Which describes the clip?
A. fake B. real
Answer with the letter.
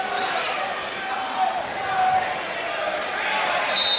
B